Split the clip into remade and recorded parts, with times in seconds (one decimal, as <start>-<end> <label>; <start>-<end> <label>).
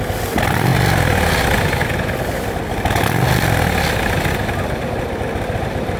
0.0-6.0 recorded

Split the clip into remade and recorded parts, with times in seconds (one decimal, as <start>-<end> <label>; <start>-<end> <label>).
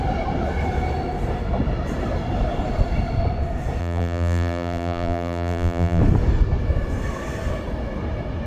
0.0-3.8 recorded; 3.8-6.0 remade; 6.0-8.5 recorded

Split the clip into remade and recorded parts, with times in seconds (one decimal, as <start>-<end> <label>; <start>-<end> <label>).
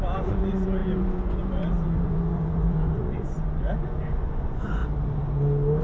0.0-4.8 remade; 4.8-5.8 recorded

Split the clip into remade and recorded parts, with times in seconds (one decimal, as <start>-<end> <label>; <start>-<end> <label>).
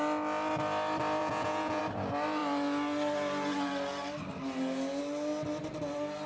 0.0-1.2 recorded; 1.2-1.8 remade; 1.8-6.3 recorded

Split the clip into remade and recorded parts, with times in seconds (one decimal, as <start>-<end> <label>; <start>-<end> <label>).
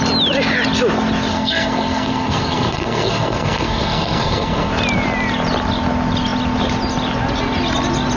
0.0-1.3 recorded; 1.3-4.7 remade; 4.7-8.2 recorded